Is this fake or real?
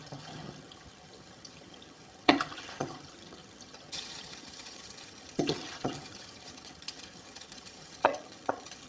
fake